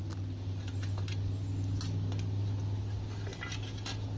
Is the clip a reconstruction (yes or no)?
no